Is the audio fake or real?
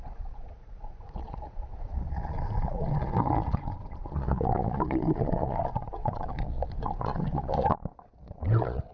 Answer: fake